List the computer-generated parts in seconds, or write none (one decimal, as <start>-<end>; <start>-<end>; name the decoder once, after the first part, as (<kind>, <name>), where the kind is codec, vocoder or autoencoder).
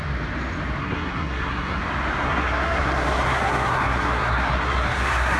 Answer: 0.8-1.8 (codec, SNAC); 2.2-5.4